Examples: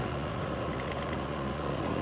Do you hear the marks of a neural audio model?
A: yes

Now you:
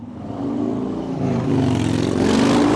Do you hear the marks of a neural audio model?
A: no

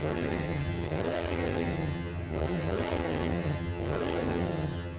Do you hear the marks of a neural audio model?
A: yes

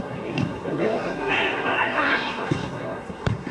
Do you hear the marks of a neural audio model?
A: yes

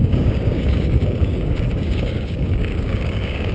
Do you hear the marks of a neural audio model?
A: yes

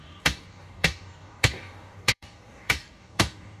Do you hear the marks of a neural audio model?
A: yes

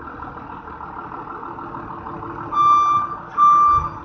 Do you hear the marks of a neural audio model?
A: no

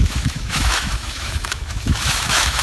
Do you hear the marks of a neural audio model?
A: yes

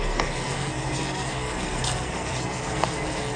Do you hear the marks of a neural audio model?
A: yes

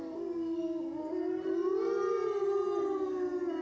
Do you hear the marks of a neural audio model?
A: no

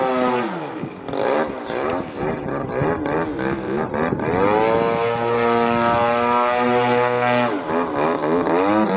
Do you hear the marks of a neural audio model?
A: no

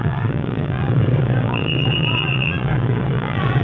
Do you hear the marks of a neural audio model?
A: yes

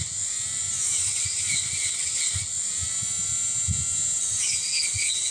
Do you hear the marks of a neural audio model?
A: no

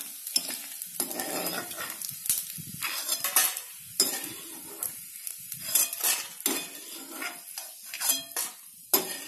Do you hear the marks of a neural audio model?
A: no